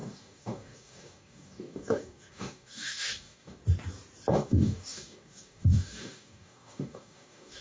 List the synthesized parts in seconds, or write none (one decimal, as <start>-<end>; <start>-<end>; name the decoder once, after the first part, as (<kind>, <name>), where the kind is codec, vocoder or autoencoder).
0.0-3.6 (codec, DAC); 4.3-7.6